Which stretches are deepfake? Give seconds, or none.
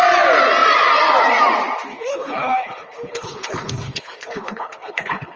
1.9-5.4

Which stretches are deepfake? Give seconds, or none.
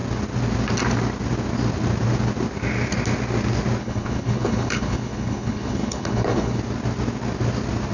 3.8-6.6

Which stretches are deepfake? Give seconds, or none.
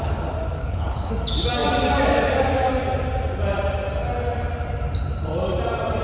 0.6-1.1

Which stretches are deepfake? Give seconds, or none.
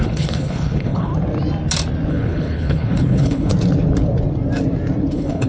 0.0-1.1; 2.1-3.5; 5.1-5.5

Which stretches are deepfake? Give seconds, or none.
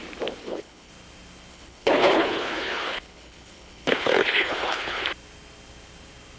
0.4-0.9; 1.5-5.0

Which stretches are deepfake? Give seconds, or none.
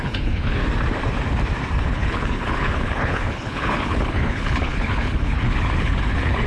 0.0-0.6; 1.8-6.5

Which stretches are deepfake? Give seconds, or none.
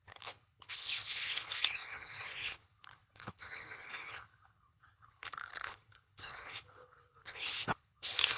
0.0-8.4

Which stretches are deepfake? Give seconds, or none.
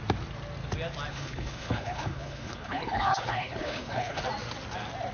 1.1-4.2